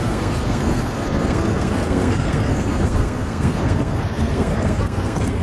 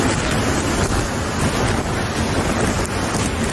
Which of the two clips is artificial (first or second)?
first